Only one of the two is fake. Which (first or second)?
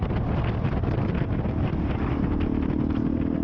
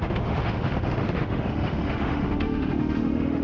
second